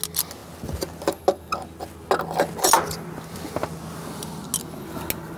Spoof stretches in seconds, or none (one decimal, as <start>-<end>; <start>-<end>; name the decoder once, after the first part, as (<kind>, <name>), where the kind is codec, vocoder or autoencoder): none